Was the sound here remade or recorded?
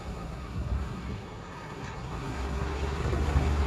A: remade